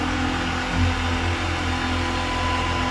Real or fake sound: real